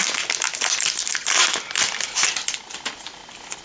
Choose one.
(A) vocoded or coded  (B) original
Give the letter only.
B